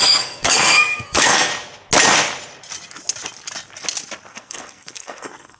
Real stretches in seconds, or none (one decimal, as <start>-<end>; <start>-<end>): 1.5-4.3